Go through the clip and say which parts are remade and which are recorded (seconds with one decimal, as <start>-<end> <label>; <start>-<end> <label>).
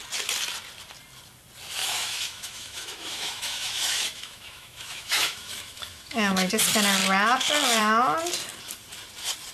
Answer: 0.0-1.8 recorded; 1.8-6.5 remade; 6.5-9.5 recorded